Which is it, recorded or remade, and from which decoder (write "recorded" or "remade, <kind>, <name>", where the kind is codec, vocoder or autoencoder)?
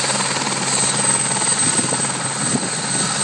recorded